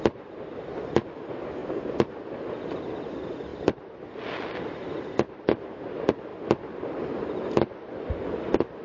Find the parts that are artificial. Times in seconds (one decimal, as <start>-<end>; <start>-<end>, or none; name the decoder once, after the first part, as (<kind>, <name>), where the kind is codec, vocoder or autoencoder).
none